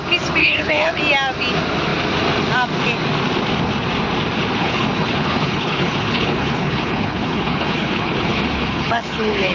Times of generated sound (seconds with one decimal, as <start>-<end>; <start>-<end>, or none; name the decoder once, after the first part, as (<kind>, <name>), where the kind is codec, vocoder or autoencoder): 0.4-1.0 (codec, HILCodec); 4.6-9.5